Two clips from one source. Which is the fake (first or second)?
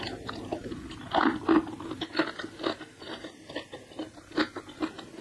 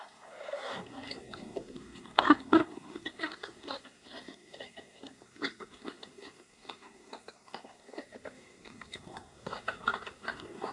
second